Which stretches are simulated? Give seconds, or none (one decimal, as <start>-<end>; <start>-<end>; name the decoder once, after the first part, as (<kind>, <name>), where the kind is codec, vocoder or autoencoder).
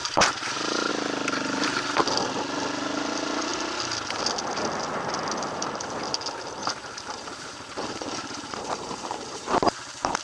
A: 0.0-0.9 (vocoder, BigVGAN v2); 6.6-9.6